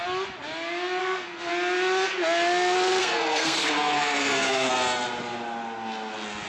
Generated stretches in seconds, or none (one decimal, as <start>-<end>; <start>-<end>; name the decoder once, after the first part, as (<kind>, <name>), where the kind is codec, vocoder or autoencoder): 1.0-1.5 (codec, SNAC); 3.0-4.7